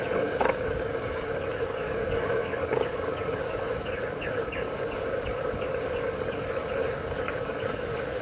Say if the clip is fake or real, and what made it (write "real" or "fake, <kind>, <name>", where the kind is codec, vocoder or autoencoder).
fake, codec, DAC